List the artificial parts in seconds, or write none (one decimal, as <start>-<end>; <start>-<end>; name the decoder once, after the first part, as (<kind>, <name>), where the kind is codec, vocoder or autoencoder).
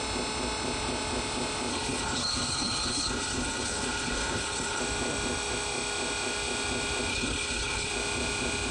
1.7-4.8 (codec, HILCodec); 7.1-7.9